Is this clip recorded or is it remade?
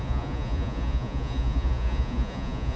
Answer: remade